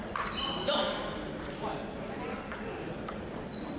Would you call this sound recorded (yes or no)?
yes